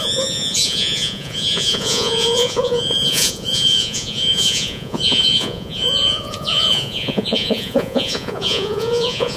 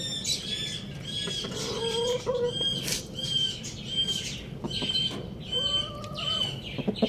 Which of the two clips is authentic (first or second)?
second